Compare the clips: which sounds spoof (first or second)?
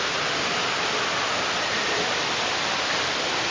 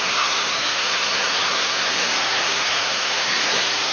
second